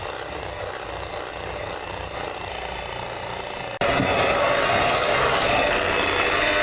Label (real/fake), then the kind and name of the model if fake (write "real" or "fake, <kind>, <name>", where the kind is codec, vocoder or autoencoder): real